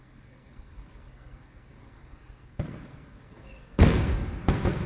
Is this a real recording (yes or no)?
no